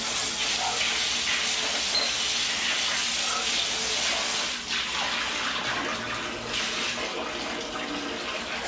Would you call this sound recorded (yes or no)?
yes